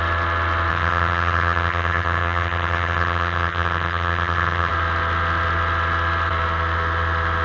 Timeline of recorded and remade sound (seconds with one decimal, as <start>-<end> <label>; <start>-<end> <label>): 0.0-0.7 recorded; 0.7-4.7 remade; 4.7-7.4 recorded